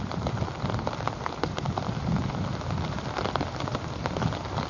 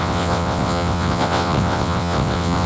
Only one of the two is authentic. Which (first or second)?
first